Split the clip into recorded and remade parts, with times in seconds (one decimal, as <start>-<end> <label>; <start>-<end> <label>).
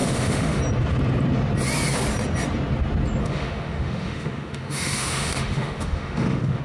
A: 0.0-0.6 remade; 0.6-3.2 recorded; 3.2-6.6 remade